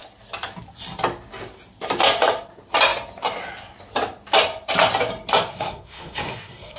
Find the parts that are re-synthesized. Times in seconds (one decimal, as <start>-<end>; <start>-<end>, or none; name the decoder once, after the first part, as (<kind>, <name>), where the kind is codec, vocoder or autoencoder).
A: 5.5-6.8 (codec, SNAC)